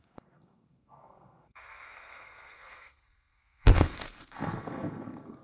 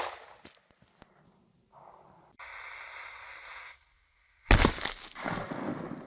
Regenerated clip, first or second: first